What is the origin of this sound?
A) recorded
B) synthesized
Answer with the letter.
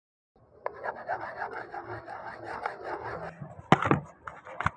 A